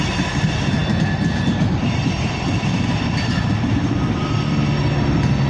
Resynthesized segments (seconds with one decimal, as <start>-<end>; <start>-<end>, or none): none